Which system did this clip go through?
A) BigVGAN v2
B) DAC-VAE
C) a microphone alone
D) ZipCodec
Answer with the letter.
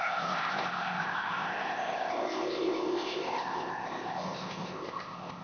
D